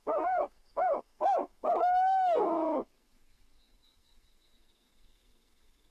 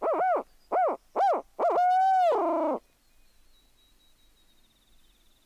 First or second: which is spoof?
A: first